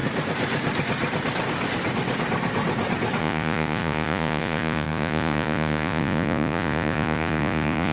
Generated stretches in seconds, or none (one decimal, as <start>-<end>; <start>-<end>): 3.2-7.9